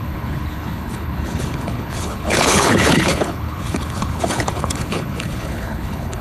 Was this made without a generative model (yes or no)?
no